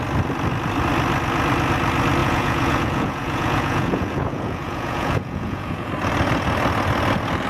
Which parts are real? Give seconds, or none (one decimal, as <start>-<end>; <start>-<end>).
0.0-2.2; 5.9-7.5